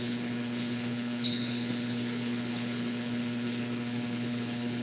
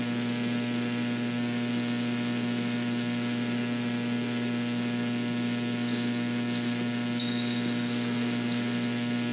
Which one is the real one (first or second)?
second